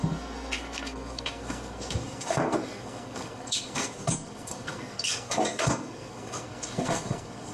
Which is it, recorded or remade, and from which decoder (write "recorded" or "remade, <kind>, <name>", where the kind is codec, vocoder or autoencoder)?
remade, codec, SNAC